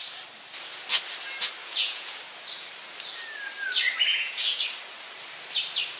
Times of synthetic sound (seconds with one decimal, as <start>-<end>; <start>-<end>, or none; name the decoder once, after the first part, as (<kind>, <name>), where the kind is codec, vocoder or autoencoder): 1.6-2.2 (vocoder, Vocos); 4.1-4.6